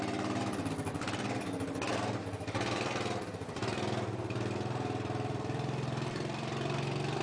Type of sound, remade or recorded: remade